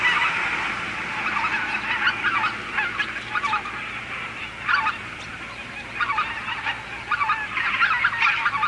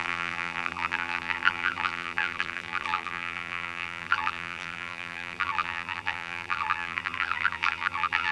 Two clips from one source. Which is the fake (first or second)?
second